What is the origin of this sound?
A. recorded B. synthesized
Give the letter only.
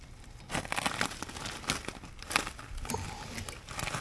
A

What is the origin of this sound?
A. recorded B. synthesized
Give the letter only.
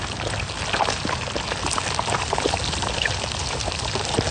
B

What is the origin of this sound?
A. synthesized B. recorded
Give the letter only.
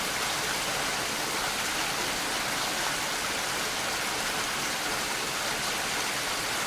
B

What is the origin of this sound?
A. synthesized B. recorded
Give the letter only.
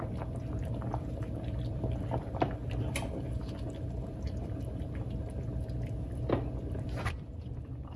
A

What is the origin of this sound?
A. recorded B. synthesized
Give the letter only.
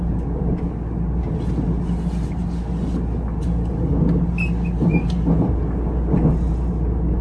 A